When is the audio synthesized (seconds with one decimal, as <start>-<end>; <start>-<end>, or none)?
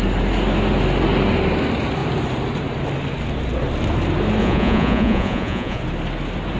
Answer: 4.4-5.8